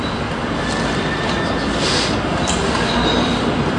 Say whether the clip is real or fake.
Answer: real